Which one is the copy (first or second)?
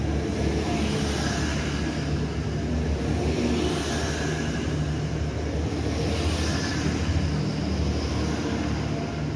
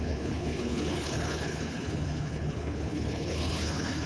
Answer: second